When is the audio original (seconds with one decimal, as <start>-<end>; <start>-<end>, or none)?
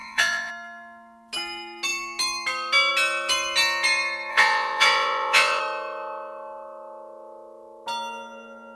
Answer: 0.5-4.3; 5.6-8.8